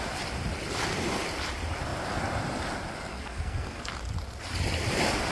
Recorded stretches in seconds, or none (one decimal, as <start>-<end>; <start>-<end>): 0.0-3.1; 3.9-5.3